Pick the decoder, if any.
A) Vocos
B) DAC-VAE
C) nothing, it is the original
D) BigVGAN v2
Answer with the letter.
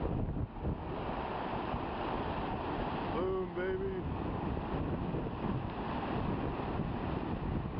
C